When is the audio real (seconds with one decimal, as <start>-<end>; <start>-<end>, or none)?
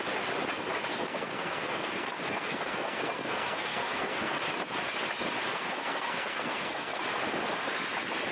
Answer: 0.0-0.9; 4.4-5.5; 7.0-8.3